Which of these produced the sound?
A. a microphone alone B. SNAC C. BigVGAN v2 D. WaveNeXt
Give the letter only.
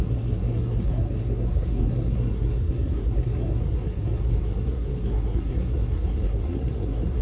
B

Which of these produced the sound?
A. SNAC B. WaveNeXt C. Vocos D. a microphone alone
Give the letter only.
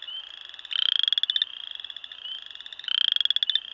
D